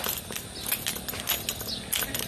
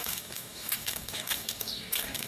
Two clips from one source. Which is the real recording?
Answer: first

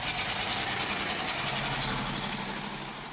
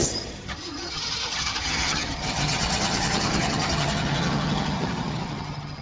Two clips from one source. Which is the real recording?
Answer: first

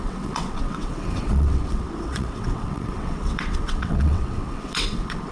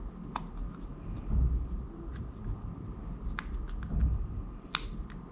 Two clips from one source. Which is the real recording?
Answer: second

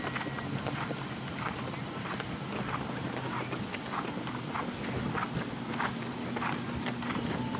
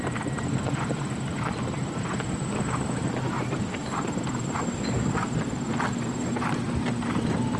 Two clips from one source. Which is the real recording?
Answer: first